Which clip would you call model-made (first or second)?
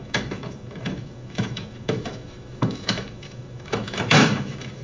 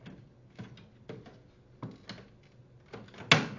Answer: first